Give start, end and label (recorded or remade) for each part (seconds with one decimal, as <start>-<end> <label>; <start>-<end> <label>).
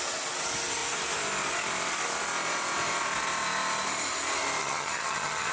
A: 0.0-4.6 recorded; 4.6-5.5 remade